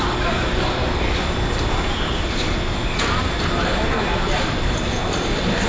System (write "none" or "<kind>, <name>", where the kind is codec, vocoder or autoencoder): none